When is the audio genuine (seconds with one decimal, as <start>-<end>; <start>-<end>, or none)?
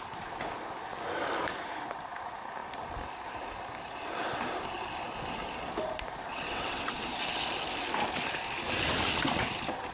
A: 0.0-6.3; 7.1-9.9